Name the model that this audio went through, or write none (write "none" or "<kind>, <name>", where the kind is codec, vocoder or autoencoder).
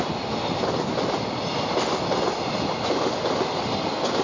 none